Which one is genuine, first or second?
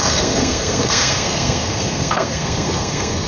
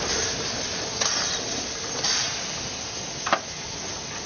second